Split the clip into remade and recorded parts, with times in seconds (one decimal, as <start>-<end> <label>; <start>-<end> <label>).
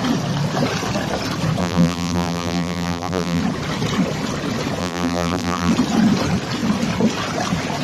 0.0-1.6 recorded; 1.6-3.4 remade; 3.4-4.8 recorded; 4.8-5.7 remade; 5.7-7.8 recorded